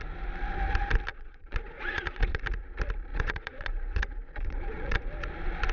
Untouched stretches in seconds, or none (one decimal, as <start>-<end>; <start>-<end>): 0.0-1.1; 2.4-3.1; 5.1-5.7